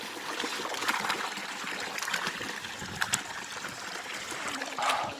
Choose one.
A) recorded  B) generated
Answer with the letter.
A